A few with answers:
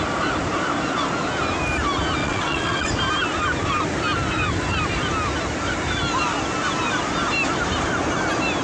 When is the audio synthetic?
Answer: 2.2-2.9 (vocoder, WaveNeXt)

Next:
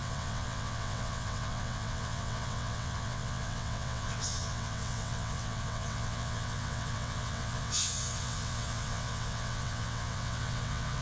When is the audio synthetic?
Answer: 0.0-11.0 (vocoder, WaveNeXt)

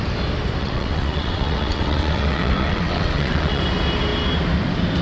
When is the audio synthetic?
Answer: 0.6-3.6 (vocoder, WaveNeXt)

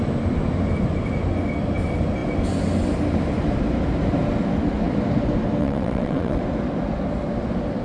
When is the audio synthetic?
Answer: 5.6-6.4 (vocoder, WaveNeXt)

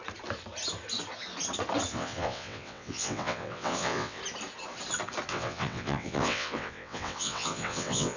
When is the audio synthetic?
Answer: 1.9-4.2 (vocoder, WaveNeXt); 5.3-8.2